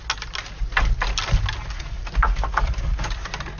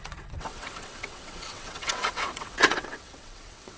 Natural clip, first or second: first